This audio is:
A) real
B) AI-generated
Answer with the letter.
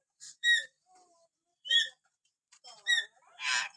B